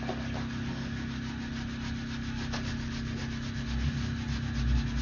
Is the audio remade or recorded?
recorded